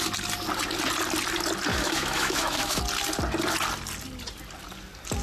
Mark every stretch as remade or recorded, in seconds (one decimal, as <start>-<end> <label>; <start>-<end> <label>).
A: 0.0-1.7 recorded; 1.7-2.8 remade; 2.8-5.2 recorded